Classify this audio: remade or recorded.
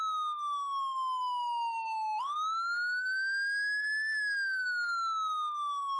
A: recorded